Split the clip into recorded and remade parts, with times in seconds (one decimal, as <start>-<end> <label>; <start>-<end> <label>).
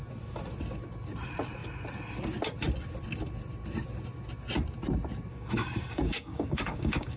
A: 0.0-5.3 recorded; 5.3-7.2 remade